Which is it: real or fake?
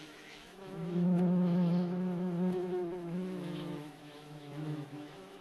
fake